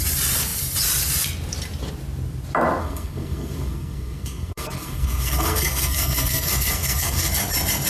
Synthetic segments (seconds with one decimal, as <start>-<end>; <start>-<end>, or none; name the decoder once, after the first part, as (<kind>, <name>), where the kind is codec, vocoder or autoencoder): 2.8-7.3 (codec, SNAC)